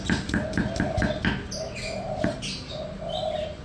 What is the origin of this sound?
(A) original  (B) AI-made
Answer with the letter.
A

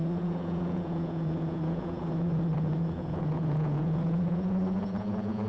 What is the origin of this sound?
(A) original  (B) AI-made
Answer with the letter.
B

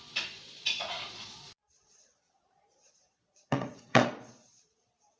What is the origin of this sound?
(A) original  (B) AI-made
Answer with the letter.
B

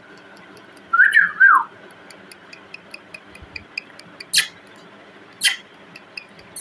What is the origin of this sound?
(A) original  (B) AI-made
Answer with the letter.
A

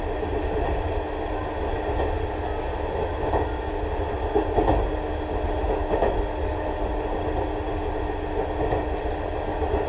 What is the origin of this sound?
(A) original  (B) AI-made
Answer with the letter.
A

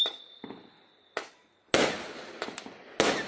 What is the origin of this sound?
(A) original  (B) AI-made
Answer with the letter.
A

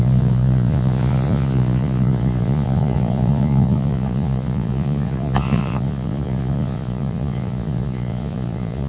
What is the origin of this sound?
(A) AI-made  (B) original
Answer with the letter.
A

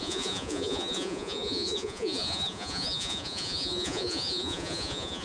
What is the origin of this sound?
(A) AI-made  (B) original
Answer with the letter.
A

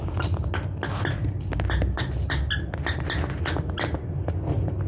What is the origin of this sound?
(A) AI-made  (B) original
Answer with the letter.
B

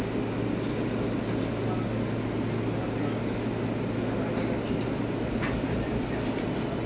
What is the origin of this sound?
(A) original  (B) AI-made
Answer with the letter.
A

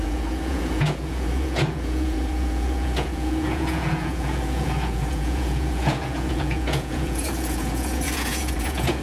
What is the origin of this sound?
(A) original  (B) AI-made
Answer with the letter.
B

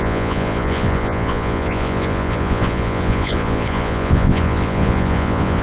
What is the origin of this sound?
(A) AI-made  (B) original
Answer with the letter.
A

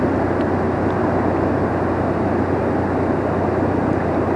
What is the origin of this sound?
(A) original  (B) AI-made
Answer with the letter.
A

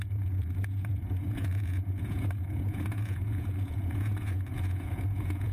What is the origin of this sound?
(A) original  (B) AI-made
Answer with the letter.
B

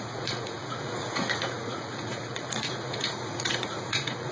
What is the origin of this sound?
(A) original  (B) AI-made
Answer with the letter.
B